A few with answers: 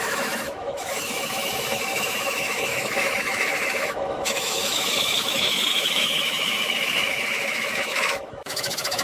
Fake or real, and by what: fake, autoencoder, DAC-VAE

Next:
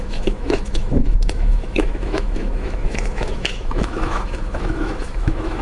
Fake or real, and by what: fake, autoencoder, DAC-VAE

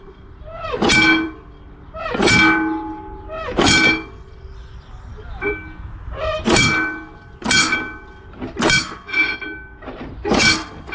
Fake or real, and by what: real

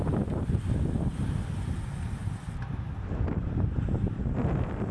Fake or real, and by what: real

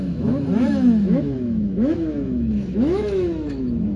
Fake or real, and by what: fake, autoencoder, DAC-VAE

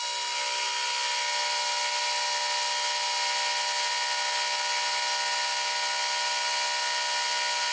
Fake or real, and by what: real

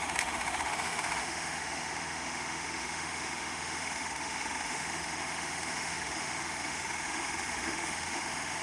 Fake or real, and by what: fake, autoencoder, DAC-VAE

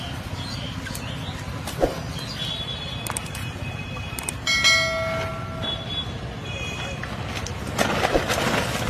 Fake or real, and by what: real